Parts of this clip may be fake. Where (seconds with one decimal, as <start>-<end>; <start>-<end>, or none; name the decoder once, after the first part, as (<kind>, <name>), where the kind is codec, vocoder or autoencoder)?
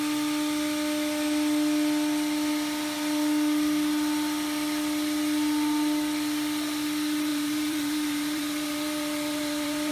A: 7.3-9.9 (vocoder, BigVGAN v2)